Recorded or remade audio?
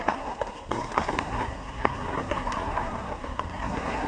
remade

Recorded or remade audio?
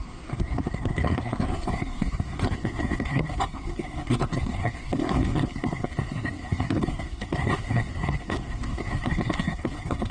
remade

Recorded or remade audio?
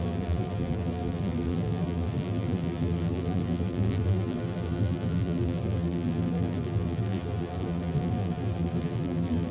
remade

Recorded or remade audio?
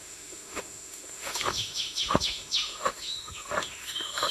remade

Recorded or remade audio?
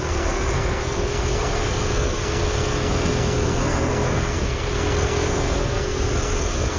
remade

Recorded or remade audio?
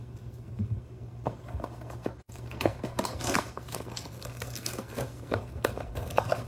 remade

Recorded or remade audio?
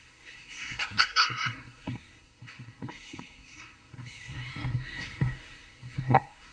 remade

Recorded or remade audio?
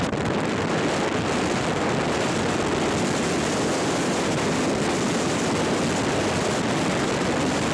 recorded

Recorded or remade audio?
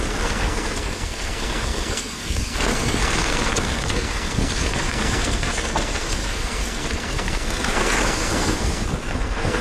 remade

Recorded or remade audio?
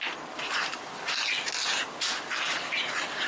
recorded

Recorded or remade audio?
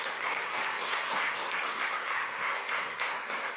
remade